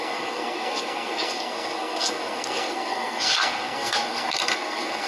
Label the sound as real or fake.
fake